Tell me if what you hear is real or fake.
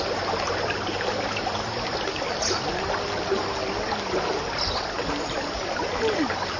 real